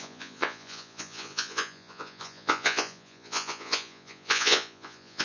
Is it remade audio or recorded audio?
remade